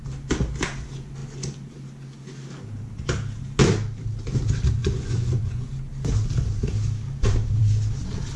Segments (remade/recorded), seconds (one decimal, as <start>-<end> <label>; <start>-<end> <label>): 0.0-4.8 recorded; 4.8-5.7 remade; 5.7-8.4 recorded